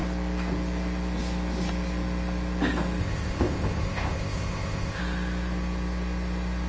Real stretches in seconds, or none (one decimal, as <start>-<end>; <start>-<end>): 0.0-3.0; 5.0-6.7